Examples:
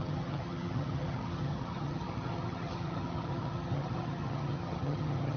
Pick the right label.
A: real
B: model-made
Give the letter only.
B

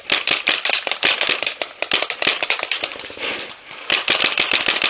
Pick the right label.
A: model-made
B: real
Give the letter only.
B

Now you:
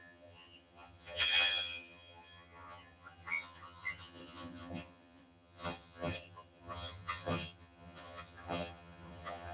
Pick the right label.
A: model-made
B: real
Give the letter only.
A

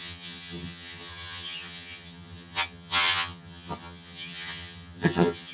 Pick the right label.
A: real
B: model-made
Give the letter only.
B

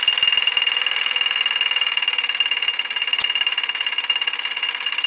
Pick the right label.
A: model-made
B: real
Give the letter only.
B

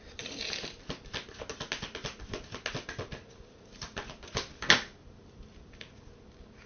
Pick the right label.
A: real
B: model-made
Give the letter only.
A